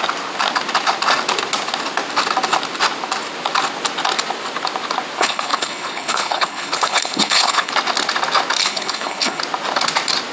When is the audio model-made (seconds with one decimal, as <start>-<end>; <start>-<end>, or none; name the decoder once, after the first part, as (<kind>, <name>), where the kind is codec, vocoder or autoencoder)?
5.2-7.7 (codec, HILCodec); 8.6-9.4